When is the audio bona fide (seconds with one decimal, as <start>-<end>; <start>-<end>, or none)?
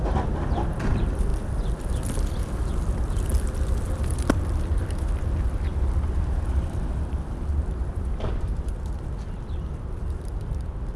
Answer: none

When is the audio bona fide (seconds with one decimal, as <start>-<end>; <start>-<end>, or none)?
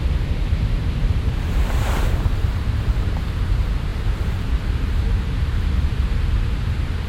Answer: 5.5-6.3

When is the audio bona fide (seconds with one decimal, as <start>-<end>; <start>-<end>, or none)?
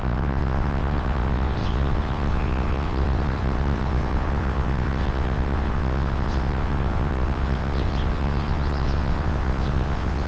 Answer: none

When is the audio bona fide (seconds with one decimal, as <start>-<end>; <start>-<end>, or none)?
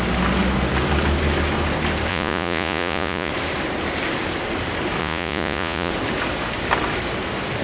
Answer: 0.0-2.1; 3.3-5.0; 5.9-7.6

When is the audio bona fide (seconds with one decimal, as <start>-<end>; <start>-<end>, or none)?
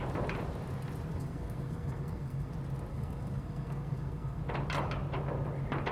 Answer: 0.0-1.1; 2.5-2.9; 4.4-5.9